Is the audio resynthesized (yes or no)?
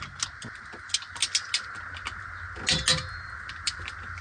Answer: no